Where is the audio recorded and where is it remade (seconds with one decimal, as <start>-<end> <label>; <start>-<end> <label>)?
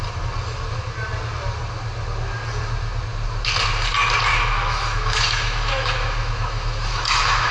0.0-4.3 recorded; 4.3-7.5 remade